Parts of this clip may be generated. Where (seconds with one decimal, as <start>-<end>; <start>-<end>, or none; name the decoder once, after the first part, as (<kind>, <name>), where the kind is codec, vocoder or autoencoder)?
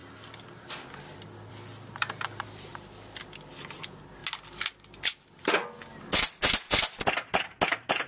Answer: none